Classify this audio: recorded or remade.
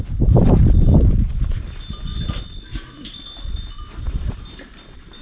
recorded